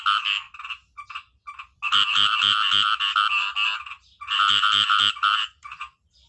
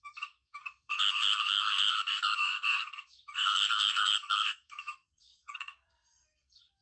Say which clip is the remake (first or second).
second